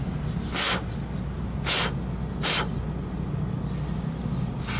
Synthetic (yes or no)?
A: no